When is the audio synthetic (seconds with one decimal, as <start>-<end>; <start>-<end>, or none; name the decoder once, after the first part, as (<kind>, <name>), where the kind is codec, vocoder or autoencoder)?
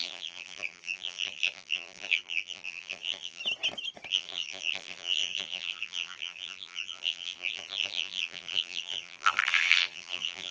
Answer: 0.0-3.4 (vocoder, BigVGAN v2); 4.1-10.5